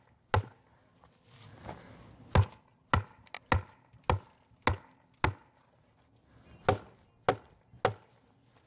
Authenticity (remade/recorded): recorded